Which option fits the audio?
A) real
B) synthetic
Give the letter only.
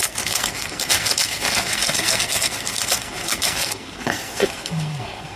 B